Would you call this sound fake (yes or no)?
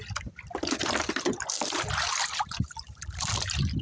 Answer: no